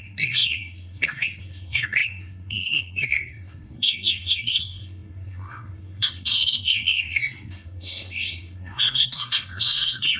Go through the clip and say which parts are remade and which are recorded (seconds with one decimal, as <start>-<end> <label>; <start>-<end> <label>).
0.0-10.2 remade